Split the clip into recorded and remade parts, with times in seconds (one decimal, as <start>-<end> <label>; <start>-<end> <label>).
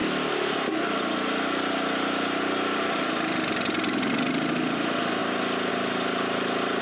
0.0-6.8 recorded